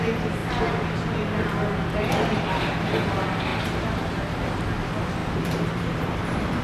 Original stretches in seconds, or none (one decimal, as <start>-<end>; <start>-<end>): 0.0-5.2

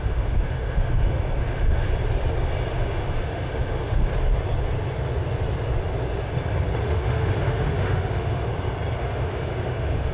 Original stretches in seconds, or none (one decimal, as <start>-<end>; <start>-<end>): 1.9-2.7; 4.1-6.8; 8.5-9.0

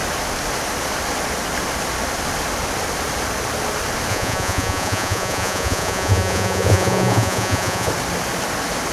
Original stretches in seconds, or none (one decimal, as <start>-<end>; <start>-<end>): 0.0-4.1; 7.9-8.9

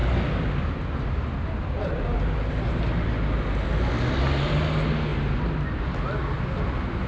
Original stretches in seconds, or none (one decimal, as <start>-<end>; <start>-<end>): 0.0-7.1

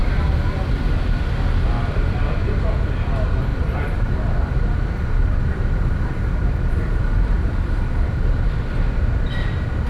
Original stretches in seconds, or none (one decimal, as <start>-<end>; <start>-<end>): 0.0-3.5; 8.2-9.9

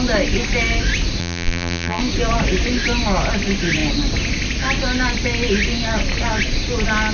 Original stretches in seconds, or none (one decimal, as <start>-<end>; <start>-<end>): 0.0-1.2; 2.0-7.1

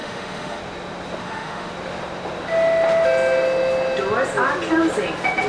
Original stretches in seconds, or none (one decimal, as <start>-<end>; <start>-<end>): 0.6-1.2; 1.7-5.5